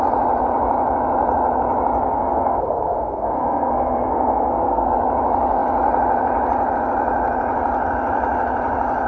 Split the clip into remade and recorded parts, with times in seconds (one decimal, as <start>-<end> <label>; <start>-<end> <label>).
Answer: 0.0-2.1 recorded; 2.1-4.9 remade; 4.9-9.1 recorded